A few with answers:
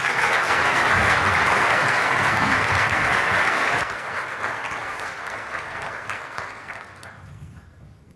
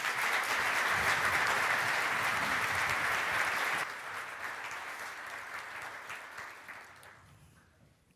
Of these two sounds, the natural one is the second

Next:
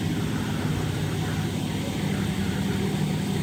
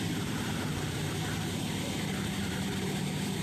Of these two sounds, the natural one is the first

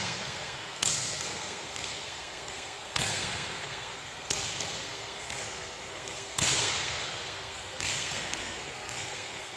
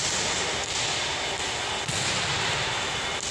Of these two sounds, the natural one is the second